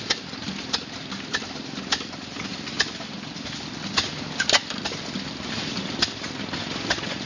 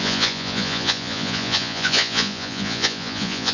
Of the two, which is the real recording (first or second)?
first